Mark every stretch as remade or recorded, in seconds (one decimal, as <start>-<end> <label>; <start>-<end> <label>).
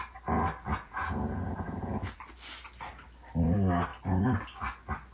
0.0-0.7 recorded; 0.7-2.2 remade; 2.2-5.1 recorded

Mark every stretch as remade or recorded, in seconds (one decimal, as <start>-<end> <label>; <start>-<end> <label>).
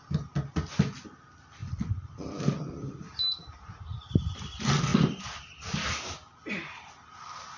0.0-7.6 recorded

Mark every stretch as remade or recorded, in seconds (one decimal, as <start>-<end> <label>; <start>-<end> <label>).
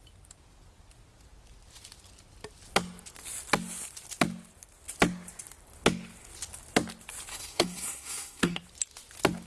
0.0-7.3 recorded; 7.3-8.6 remade; 8.6-9.5 recorded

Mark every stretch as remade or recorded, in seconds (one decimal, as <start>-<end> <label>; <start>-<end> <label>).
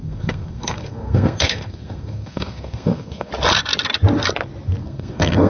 0.0-3.3 remade; 3.3-4.8 recorded; 4.8-5.5 remade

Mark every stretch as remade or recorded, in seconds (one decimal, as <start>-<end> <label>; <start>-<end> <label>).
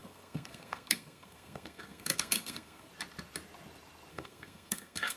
0.0-2.9 remade; 2.9-4.1 recorded; 4.1-5.2 remade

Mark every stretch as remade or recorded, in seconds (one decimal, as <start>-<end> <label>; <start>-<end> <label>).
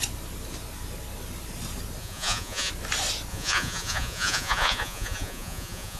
0.0-2.0 recorded; 2.0-2.7 remade; 2.7-3.3 recorded; 3.3-6.0 remade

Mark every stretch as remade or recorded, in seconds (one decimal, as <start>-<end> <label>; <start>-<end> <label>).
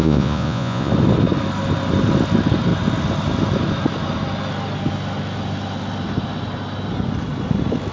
0.0-0.9 remade; 0.9-7.9 recorded